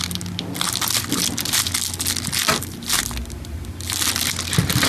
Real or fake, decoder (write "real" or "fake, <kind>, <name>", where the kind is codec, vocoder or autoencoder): real